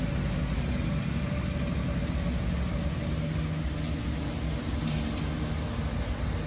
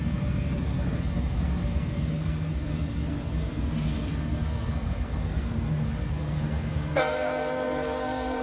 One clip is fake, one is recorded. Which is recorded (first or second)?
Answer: first